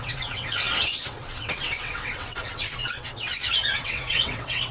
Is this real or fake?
fake